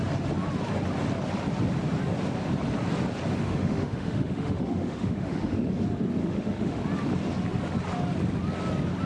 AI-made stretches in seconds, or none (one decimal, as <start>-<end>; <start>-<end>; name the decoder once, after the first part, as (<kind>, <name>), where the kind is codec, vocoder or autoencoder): 3.4-5.7 (autoencoder, DAC-VAE); 6.2-6.8

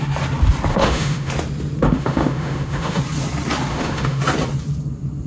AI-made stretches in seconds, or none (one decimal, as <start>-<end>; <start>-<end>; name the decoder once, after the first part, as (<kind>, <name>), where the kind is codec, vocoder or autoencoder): 0.7-1.3 (autoencoder, DAC-VAE); 1.8-3.0; 3.7-4.2

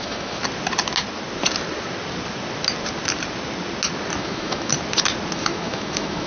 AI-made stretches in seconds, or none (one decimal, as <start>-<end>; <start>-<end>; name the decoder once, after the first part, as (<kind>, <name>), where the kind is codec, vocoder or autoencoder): 0.0-0.4 (autoencoder, DAC-VAE); 4.2-4.7; 5.3-6.3

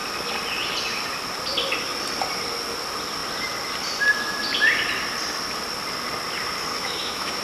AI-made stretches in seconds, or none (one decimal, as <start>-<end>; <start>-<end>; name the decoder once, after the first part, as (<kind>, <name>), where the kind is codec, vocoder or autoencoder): 6.7-7.4 (autoencoder, DAC-VAE)

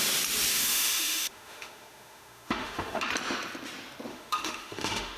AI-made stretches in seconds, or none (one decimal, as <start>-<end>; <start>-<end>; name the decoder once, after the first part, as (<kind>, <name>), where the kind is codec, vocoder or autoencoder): 0.5-3.1 (autoencoder, DAC-VAE); 4.1-5.2

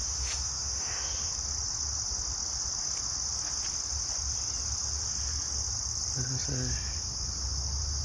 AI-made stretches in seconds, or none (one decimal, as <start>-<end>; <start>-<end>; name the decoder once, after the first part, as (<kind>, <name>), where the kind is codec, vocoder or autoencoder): 0.0-1.3 (autoencoder, DAC-VAE)

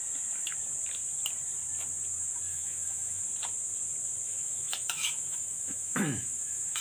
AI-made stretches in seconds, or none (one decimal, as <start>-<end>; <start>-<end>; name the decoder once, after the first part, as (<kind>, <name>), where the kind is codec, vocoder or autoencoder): 2.5-3.2 (autoencoder, DAC-VAE); 4.3-6.8

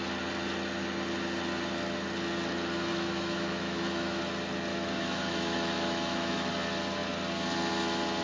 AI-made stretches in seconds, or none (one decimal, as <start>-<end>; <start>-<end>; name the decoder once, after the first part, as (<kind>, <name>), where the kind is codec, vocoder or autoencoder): 2.9-4.2 (autoencoder, DAC-VAE); 4.7-6.5